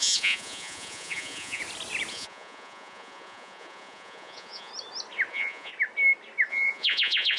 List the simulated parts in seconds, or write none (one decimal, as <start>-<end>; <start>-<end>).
0.0-1.6; 2.1-4.7; 5.3-5.7; 6.5-7.4